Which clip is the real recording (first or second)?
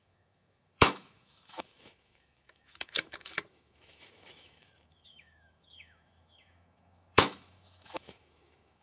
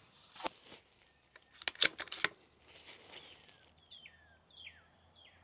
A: second